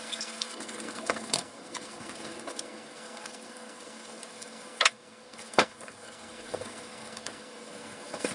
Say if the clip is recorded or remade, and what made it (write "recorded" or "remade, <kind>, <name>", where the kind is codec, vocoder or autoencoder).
remade, codec, SNAC